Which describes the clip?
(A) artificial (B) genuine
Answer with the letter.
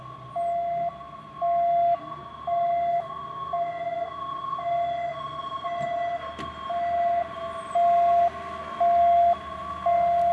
B